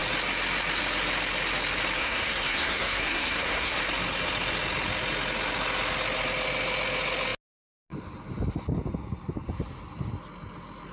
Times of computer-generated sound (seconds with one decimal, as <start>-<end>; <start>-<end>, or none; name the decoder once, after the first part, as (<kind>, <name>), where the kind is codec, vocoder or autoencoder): 2.0-3.8 (codec, SNAC)